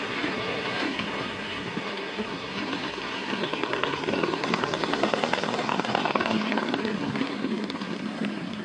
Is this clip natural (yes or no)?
no